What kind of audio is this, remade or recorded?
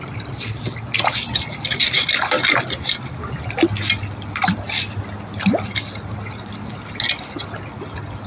recorded